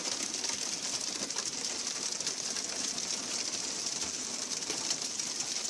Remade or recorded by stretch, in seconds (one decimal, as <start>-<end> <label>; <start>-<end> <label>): 0.0-5.7 recorded